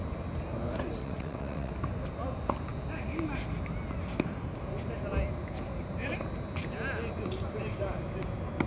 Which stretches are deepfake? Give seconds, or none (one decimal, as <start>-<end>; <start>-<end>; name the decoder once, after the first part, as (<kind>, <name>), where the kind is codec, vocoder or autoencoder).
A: 1.0-1.7 (vocoder, WaveNeXt)